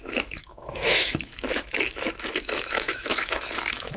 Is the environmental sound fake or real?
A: fake